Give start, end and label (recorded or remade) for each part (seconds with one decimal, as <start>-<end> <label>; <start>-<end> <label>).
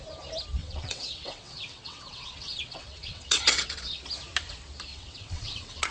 0.0-0.6 recorded; 0.6-4.1 remade; 4.1-4.9 recorded; 4.9-5.9 remade